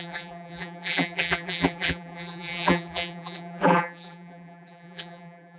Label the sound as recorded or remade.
remade